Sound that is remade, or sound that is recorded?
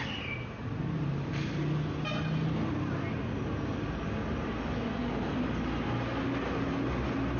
recorded